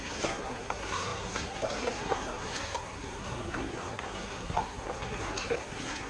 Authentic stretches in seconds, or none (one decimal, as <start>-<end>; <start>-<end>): none